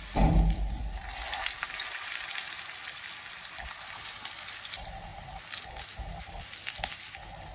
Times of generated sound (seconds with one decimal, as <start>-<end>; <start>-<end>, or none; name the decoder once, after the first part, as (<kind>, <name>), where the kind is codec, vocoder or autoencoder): none